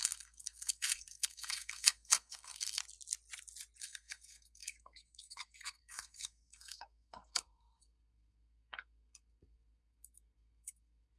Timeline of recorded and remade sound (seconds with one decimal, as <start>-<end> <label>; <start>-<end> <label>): 0.0-2.8 remade; 2.8-3.8 recorded; 3.8-11.2 remade